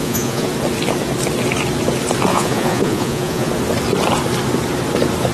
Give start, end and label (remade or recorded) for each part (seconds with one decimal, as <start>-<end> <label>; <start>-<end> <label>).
0.0-0.5 remade; 0.5-2.3 recorded; 2.3-3.5 remade; 3.5-5.3 recorded